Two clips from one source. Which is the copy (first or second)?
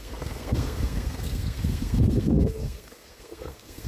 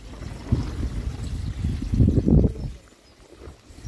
first